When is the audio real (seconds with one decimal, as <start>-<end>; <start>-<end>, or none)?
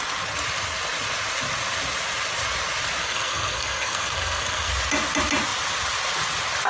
0.0-3.0; 4.7-6.7